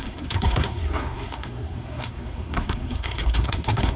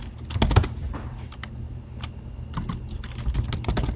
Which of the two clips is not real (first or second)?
first